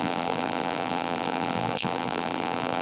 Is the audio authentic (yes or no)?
no